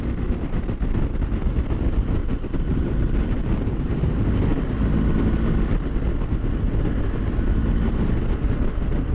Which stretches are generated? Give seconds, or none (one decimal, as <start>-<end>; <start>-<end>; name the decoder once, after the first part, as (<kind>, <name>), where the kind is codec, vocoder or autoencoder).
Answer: 2.2-4.0 (vocoder, BigVGAN v2)